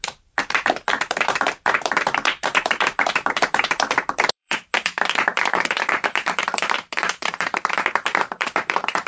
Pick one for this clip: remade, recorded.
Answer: remade